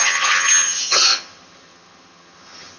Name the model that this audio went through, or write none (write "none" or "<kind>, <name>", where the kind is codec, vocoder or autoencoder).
vocoder, HiFi-GAN